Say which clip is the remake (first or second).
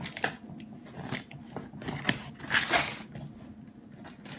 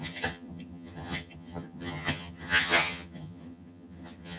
second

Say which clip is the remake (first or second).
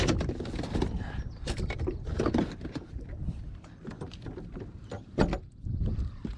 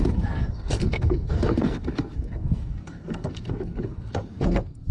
second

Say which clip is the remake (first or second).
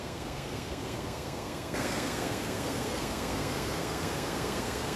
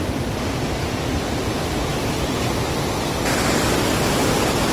first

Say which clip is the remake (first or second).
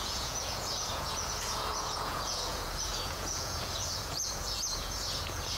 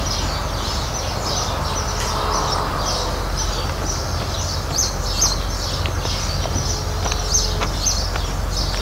first